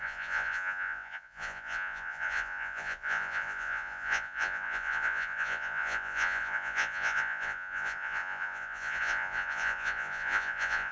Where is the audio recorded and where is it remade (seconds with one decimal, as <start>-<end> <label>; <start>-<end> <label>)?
0.0-10.9 remade